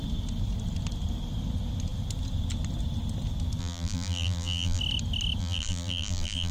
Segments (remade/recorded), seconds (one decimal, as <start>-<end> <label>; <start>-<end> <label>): 0.0-3.6 recorded; 3.6-4.8 remade; 4.8-5.4 recorded; 5.4-6.5 remade